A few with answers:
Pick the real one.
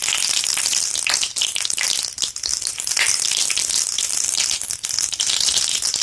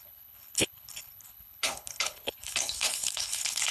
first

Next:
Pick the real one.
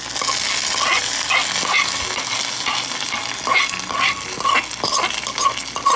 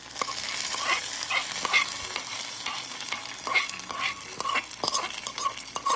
first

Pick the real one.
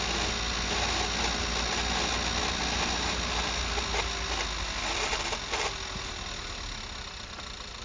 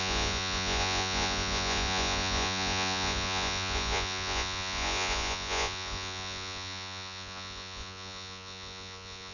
first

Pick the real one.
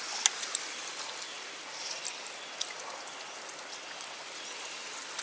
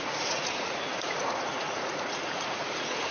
first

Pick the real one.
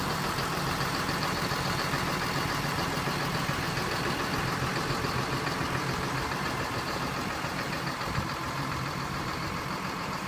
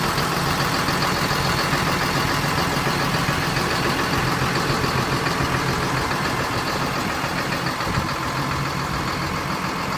second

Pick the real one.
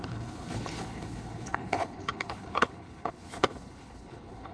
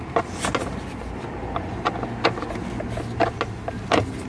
second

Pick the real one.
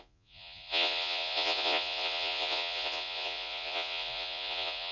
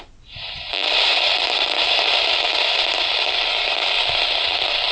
second